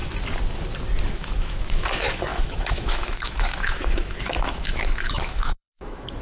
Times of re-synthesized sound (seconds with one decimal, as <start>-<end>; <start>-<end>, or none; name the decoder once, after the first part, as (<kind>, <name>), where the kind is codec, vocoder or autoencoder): 1.1-6.2 (autoencoder, DAC-VAE)